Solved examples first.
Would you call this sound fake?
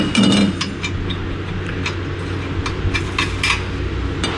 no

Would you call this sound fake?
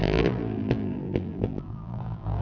yes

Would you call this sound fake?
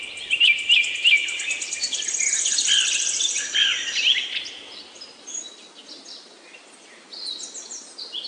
no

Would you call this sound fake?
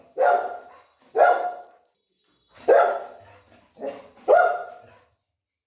no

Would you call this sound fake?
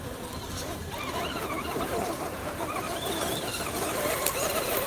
yes